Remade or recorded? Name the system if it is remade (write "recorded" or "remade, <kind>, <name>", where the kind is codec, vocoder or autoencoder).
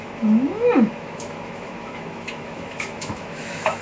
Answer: remade, autoencoder, DAC-VAE